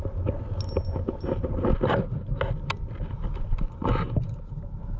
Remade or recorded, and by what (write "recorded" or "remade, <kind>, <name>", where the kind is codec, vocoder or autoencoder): recorded